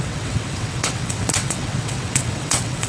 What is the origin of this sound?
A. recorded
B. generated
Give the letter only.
B